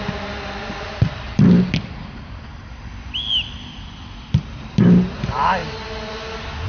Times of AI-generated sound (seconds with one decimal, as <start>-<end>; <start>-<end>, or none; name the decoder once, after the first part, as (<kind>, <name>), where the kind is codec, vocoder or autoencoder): none